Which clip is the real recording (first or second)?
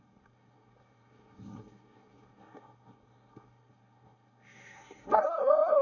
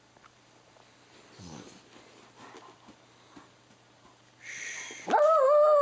second